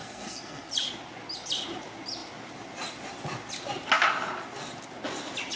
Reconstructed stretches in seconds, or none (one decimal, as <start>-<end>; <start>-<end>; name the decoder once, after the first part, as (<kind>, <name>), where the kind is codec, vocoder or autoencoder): 0.0-0.7 (codec, SNAC)